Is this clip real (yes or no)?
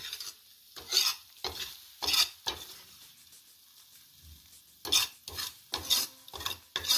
yes